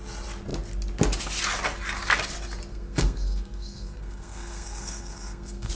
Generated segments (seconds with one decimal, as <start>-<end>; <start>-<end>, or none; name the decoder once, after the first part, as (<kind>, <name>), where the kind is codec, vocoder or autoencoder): 2.7-5.7 (codec, SNAC)